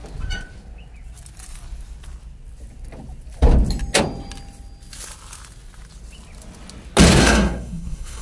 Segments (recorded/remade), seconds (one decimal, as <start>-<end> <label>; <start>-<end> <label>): 0.0-7.2 recorded; 7.2-8.2 remade